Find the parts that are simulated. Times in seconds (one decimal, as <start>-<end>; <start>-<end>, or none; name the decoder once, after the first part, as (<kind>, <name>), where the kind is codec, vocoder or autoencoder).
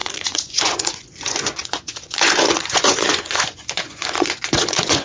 0.0-5.0 (vocoder, Vocos)